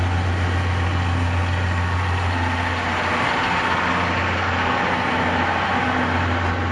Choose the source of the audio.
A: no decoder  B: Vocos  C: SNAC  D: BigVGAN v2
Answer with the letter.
A